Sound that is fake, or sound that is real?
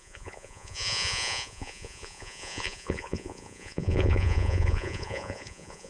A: fake